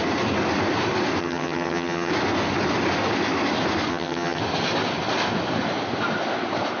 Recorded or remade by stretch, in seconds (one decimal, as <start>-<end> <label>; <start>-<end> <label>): 0.0-1.2 recorded; 1.2-2.1 remade; 2.1-3.9 recorded; 3.9-4.4 remade; 4.4-6.8 recorded